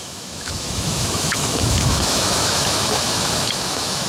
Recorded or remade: remade